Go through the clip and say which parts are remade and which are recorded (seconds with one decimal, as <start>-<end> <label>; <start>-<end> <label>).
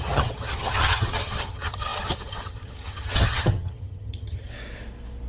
0.0-4.5 remade; 4.5-5.3 recorded